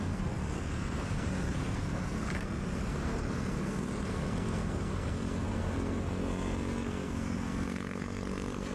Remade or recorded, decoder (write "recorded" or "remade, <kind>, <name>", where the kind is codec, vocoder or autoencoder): remade, codec, SNAC